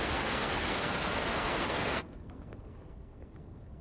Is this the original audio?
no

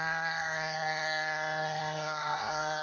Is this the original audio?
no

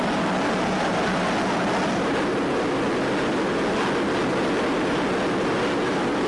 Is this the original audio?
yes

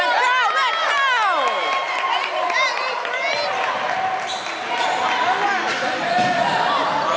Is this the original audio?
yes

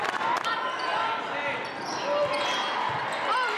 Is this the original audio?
yes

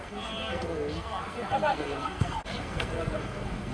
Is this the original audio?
no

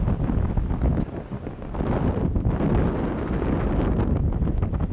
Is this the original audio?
yes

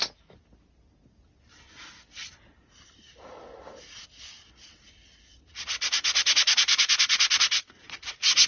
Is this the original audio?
yes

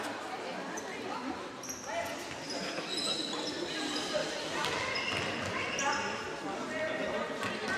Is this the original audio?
yes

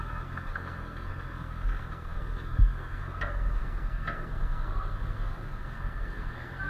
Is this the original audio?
no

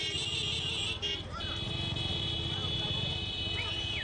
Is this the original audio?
yes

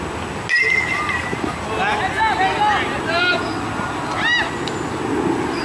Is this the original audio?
yes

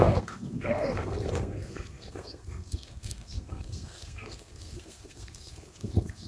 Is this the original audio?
no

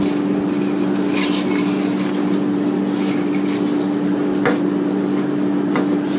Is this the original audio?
yes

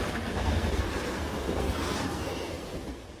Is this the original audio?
no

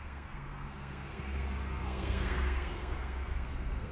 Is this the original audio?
no